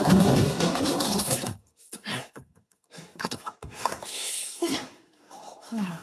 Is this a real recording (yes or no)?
no